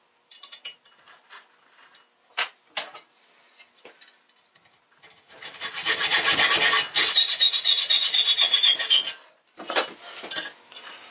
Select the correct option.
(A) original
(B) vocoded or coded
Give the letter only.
A